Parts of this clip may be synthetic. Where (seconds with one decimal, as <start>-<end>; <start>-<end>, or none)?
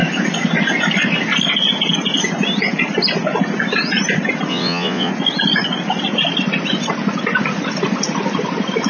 4.5-5.1